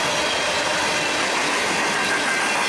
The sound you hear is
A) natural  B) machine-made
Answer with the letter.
A